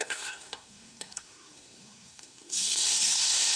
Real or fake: fake